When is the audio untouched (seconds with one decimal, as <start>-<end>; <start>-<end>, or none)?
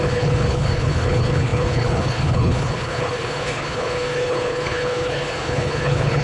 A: none